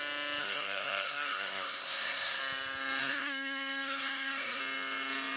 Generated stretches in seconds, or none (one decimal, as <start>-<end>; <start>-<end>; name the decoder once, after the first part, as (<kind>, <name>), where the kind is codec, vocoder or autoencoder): 0.4-2.4 (codec, SNAC); 3.0-4.6